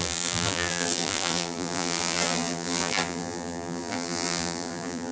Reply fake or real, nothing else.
fake